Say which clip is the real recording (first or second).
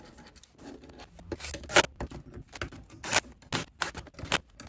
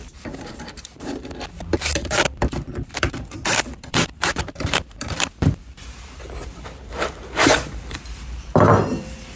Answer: first